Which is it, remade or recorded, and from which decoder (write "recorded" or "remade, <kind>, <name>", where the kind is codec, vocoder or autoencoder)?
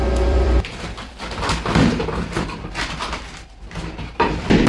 remade, vocoder, BigVGAN v2